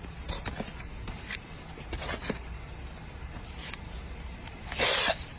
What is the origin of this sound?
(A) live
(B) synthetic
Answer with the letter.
B